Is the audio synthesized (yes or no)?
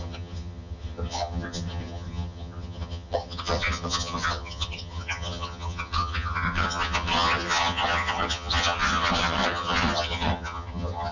yes